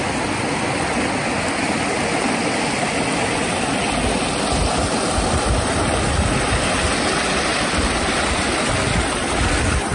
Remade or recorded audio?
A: recorded